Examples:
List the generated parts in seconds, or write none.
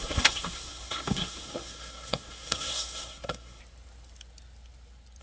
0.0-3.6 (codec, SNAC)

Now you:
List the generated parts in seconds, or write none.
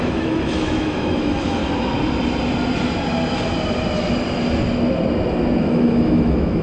0.0-1.6 (autoencoder, DAC-VAE); 5.6-6.6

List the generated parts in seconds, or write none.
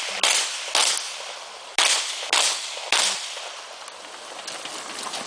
none